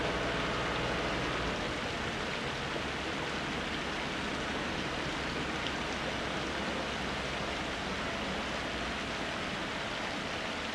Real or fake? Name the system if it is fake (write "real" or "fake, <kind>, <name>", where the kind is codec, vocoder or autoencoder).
real